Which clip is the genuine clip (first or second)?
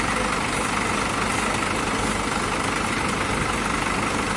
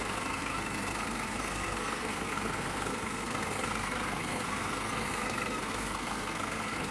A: first